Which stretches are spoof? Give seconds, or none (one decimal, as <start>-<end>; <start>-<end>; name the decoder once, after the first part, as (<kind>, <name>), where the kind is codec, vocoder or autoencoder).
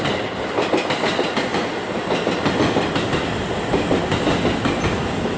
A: none